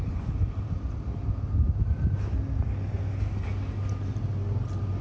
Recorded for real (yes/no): yes